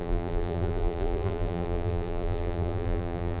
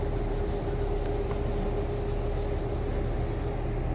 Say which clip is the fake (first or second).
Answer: first